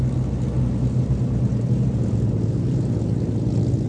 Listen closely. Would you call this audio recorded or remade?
recorded